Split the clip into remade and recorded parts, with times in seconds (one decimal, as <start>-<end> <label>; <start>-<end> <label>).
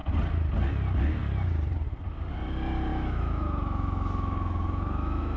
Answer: 0.0-2.9 recorded; 2.9-5.4 remade